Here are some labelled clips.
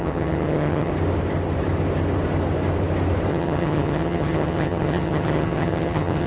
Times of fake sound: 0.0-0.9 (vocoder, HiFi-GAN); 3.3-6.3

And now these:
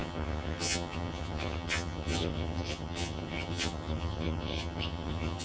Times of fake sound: 0.0-5.4 (vocoder, HiFi-GAN)